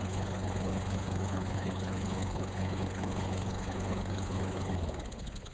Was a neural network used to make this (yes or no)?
yes